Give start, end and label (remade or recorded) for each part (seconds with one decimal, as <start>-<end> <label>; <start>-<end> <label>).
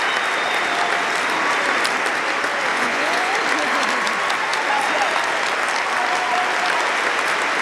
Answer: 0.0-2.7 recorded; 2.7-3.3 remade; 3.3-7.6 recorded